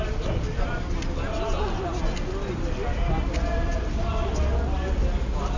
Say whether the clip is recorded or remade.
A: recorded